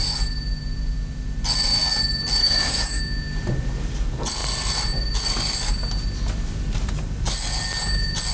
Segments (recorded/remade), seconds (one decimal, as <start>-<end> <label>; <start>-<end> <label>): 0.0-2.4 recorded; 2.4-3.0 remade; 3.0-8.3 recorded